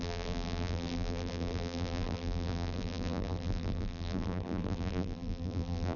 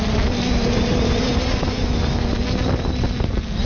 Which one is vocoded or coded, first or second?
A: first